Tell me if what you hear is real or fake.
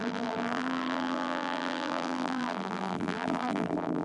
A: fake